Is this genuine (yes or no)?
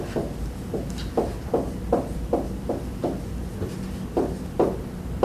yes